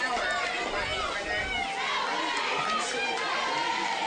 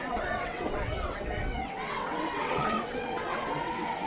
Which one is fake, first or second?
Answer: second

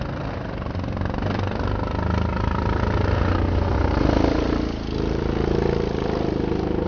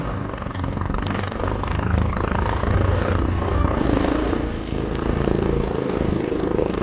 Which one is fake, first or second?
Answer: second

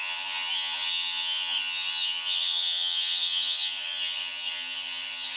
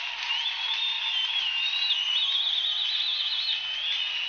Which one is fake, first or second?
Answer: first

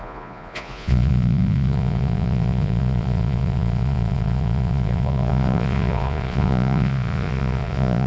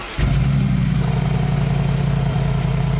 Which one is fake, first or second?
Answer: first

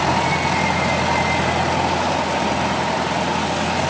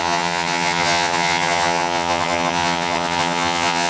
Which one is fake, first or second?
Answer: second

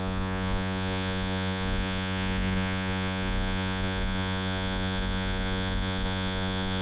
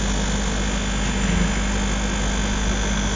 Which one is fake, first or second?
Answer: first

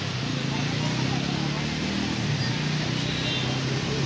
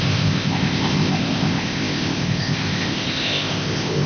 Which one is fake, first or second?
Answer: second